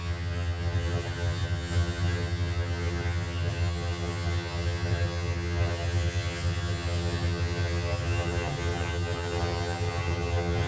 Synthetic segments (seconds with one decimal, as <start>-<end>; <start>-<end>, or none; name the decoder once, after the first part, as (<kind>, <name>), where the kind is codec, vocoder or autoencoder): 0.0-10.7 (vocoder, HiFi-GAN)